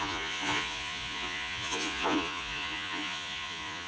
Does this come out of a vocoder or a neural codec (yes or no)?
yes